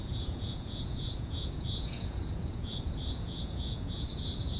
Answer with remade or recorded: remade